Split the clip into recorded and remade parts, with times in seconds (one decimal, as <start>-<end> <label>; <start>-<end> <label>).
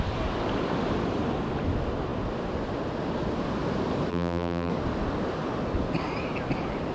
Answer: 0.0-4.1 recorded; 4.1-4.7 remade; 4.7-6.9 recorded